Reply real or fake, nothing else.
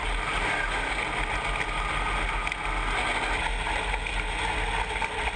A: real